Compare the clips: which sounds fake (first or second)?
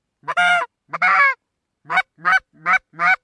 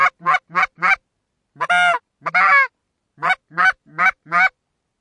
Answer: first